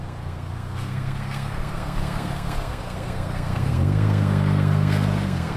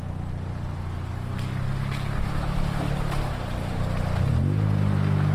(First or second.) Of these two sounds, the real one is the second